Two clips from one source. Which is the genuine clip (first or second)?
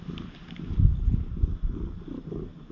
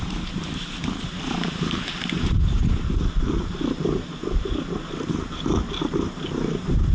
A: first